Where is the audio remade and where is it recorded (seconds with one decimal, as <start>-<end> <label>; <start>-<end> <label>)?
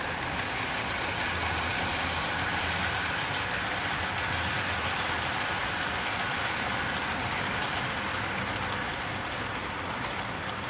0.0-10.7 recorded